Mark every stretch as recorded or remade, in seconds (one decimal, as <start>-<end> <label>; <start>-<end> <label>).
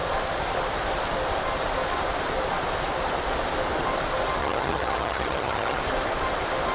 0.0-4.4 recorded; 4.4-5.8 remade; 5.8-6.7 recorded